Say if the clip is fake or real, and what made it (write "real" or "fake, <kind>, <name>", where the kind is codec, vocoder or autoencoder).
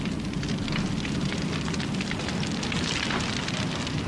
real